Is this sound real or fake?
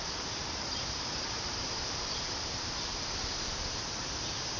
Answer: fake